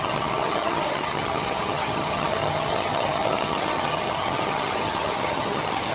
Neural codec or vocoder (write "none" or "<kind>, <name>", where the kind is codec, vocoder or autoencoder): vocoder, HiFi-GAN